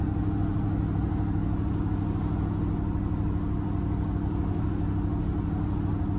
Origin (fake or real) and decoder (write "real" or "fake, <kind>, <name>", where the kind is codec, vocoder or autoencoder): real